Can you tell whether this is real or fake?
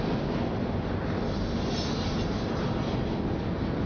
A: real